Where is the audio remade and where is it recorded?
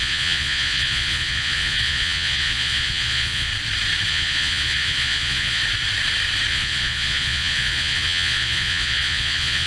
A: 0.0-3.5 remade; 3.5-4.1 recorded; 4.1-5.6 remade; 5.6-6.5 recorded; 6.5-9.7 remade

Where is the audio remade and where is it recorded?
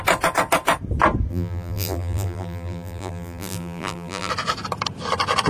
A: 0.0-1.3 recorded; 1.3-4.3 remade; 4.3-5.5 recorded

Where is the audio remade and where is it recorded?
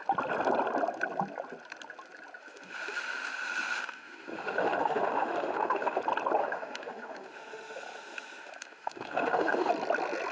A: 0.0-2.4 recorded; 2.4-6.0 remade; 6.0-6.4 recorded; 6.4-9.7 remade; 9.7-10.3 recorded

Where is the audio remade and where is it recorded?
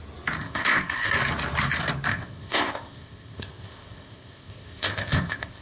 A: 0.0-0.4 recorded; 0.4-1.1 remade; 1.1-2.1 recorded; 2.1-5.6 remade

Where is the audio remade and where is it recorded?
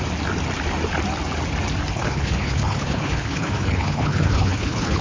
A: 0.0-1.9 recorded; 1.9-5.0 remade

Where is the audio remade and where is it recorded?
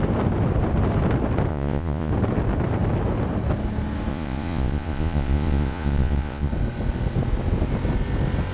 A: 0.0-1.5 recorded; 1.5-2.1 remade; 2.1-4.1 recorded; 4.1-6.5 remade; 6.5-8.5 recorded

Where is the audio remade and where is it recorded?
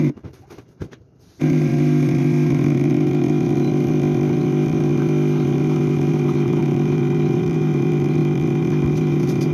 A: 0.0-1.7 remade; 1.7-6.1 recorded; 6.1-8.2 remade; 8.2-8.9 recorded; 8.9-9.5 remade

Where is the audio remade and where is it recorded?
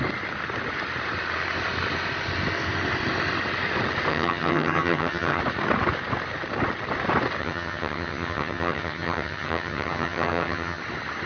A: 0.0-4.1 recorded; 4.1-5.4 remade; 5.4-7.4 recorded; 7.4-10.8 remade; 10.8-11.3 recorded